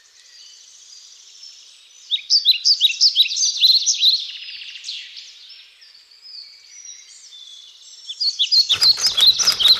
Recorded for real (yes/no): yes